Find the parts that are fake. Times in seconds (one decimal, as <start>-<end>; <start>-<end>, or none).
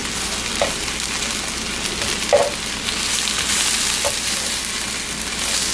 none